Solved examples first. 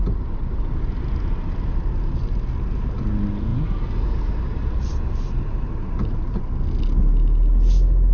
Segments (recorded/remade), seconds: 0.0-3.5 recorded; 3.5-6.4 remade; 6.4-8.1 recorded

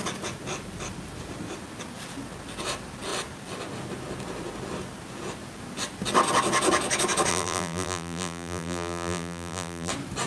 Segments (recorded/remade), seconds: 0.0-7.3 recorded; 7.3-9.9 remade; 9.9-10.3 recorded